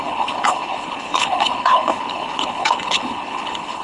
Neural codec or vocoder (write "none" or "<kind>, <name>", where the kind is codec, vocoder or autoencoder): codec, HILCodec